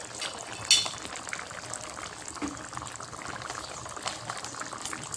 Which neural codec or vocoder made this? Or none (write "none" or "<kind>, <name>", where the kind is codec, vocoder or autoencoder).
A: none